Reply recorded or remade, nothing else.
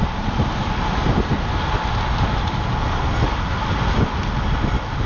recorded